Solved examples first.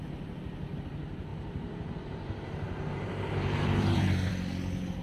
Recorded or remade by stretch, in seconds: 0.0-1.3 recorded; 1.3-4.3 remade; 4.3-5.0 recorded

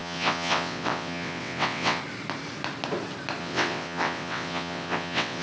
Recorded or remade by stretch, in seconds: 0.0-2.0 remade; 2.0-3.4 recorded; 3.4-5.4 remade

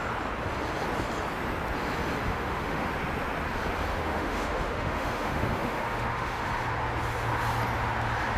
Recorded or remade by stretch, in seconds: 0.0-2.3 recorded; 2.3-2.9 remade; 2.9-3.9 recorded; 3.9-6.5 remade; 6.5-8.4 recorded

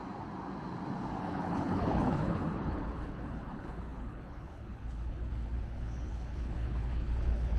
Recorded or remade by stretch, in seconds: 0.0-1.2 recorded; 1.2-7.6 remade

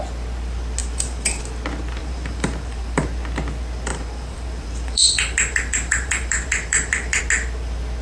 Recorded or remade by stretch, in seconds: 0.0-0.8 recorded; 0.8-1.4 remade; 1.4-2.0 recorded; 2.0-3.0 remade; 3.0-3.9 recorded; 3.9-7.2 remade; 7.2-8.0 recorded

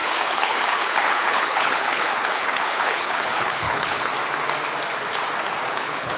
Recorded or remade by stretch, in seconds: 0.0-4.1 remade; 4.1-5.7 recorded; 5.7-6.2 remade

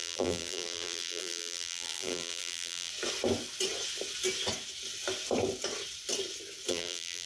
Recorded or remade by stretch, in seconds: 0.0-2.9 remade; 2.9-6.7 recorded; 6.7-7.3 remade

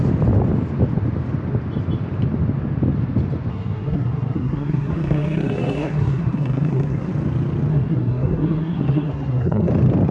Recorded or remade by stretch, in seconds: 0.0-3.5 recorded; 3.5-7.1 remade; 7.1-7.7 recorded; 7.7-9.7 remade; 9.7-10.1 recorded